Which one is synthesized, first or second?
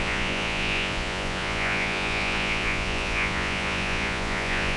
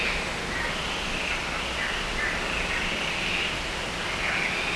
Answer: first